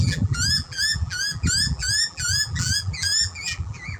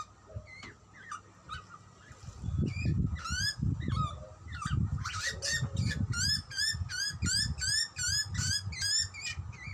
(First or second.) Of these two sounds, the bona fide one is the second